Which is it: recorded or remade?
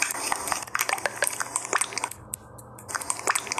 recorded